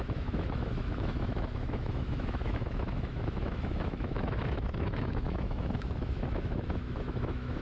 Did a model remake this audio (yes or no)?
yes